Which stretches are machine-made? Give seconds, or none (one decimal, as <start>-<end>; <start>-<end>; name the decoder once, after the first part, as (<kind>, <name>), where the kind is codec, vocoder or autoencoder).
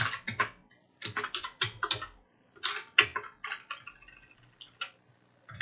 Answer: none